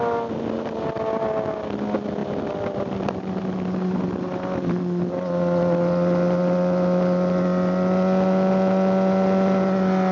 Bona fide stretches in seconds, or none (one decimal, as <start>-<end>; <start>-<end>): 0.0-10.1